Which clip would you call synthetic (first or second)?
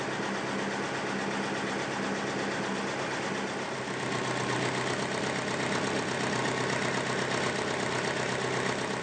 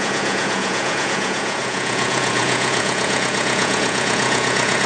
second